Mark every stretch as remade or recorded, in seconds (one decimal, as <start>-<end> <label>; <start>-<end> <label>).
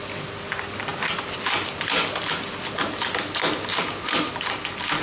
0.0-5.0 recorded